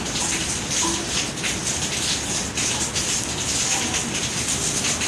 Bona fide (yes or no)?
yes